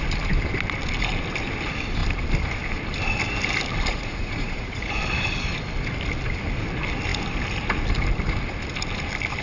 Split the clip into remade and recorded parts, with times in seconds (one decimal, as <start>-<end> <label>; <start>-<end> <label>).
0.0-3.9 recorded; 3.9-5.0 remade; 5.0-9.4 recorded